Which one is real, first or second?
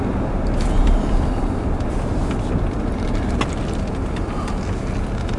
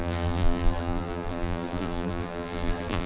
first